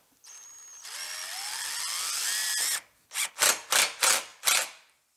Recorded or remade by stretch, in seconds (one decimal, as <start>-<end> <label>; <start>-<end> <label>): 0.0-4.3 recorded; 4.3-5.2 remade